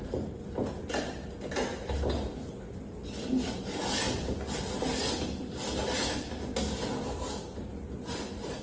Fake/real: real